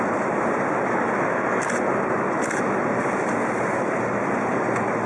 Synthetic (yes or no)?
no